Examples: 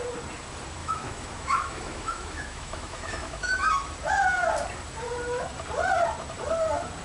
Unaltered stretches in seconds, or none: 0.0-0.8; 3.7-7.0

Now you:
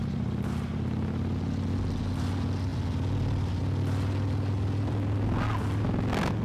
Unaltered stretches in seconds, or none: 0.0-6.4

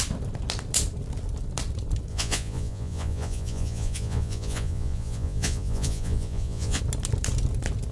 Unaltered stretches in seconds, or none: 0.0-2.1; 6.8-7.9

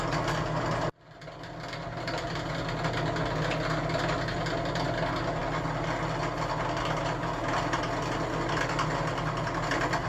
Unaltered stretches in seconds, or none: 0.0-10.1

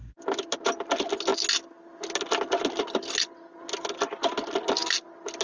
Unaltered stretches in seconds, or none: 0.0-5.4

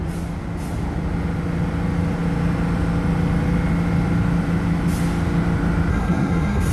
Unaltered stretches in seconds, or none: 0.0-5.9

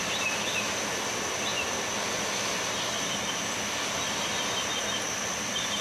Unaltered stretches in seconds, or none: 0.0-5.8